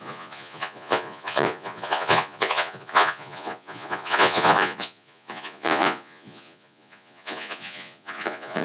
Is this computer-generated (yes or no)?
yes